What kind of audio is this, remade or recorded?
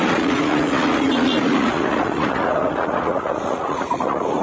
remade